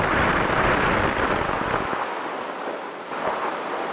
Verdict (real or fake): real